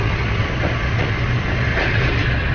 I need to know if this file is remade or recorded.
remade